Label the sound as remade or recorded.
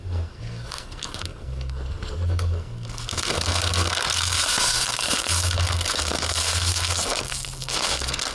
remade